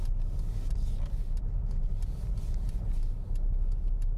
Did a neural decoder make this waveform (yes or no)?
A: no